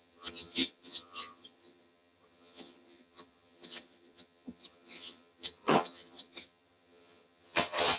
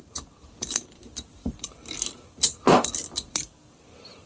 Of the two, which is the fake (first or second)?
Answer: first